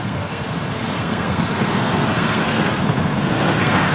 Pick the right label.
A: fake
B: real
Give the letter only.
A